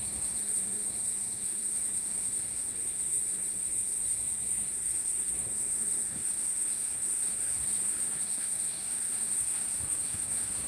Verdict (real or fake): fake